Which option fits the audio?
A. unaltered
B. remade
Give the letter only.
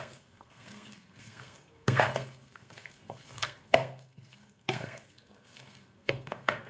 B